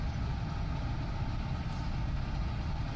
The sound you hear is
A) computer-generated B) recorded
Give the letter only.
B